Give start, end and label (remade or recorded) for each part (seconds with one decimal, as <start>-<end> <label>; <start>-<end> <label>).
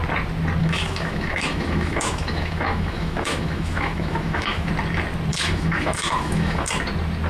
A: 0.0-0.6 recorded; 0.6-4.7 remade; 4.7-5.3 recorded; 5.3-6.7 remade; 6.7-7.3 recorded